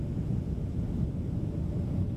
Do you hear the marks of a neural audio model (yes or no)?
no